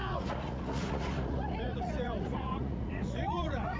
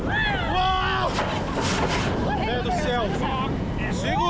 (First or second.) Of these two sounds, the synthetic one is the first